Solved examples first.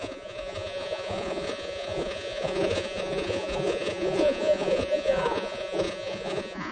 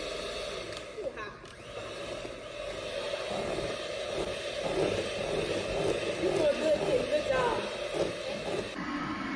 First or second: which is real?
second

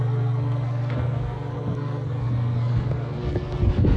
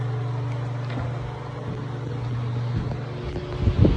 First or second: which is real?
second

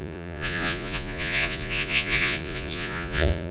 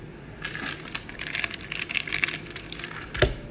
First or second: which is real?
second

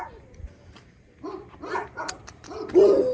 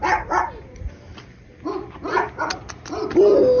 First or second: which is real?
second